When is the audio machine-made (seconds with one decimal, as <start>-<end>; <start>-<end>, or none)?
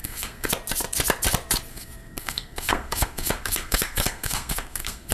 0.0-0.5; 1.7-5.1